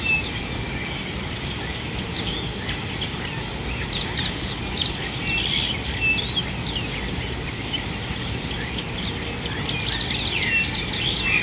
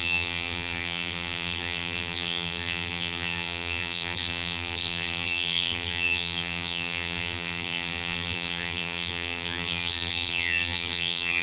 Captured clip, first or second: first